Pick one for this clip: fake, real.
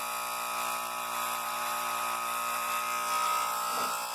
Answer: real